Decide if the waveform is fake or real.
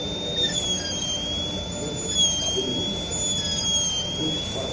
real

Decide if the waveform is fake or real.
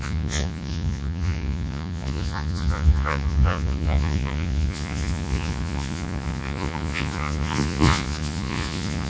fake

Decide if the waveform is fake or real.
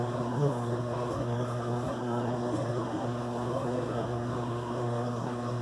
fake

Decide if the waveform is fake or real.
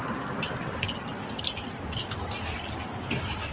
real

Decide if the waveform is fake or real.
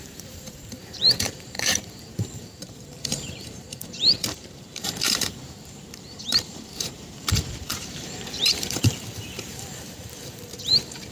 fake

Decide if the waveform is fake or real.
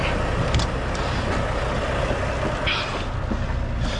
real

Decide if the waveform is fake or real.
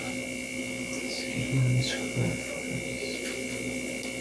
real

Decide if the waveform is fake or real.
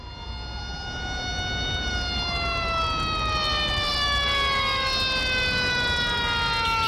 real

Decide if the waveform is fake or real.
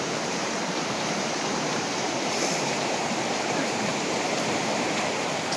fake